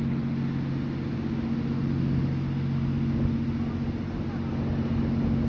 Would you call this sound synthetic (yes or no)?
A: no